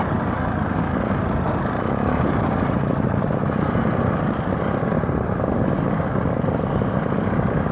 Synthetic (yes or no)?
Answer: no